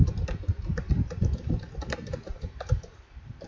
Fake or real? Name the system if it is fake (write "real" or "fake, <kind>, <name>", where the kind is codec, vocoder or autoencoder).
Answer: fake, vocoder, BigVGAN v2